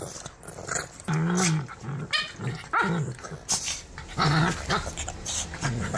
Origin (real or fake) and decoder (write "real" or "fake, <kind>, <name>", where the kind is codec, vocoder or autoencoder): real